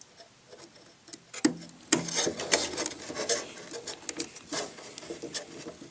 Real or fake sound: real